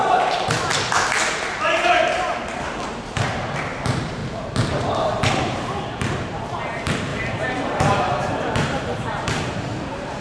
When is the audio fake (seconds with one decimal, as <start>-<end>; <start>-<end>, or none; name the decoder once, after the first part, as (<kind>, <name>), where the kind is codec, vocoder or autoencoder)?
0.0-0.7 (vocoder, BigVGAN v2); 1.5-4.2; 4.9-10.2